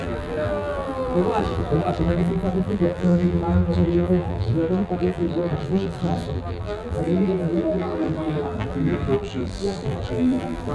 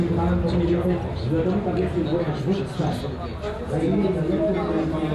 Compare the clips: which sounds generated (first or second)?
first